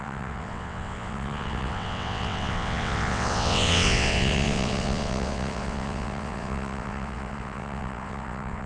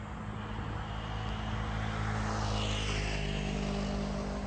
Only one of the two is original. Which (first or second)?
second